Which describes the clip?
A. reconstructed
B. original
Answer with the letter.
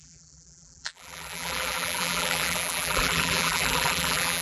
A